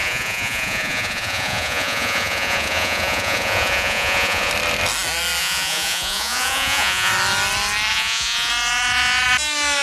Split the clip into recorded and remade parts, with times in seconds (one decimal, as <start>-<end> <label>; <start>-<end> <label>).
0.0-4.5 remade; 4.5-5.4 recorded; 5.4-7.1 remade; 7.1-7.9 recorded; 7.9-8.5 remade; 8.5-9.8 recorded